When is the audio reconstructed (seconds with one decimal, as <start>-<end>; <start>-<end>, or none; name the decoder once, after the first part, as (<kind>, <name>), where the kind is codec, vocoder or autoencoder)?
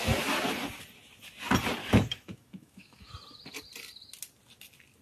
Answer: 1.8-3.1 (autoencoder, DAC-VAE)